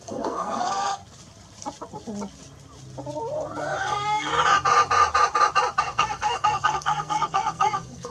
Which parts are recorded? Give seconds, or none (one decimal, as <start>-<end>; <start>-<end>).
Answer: 1.0-3.8; 4.3-5.8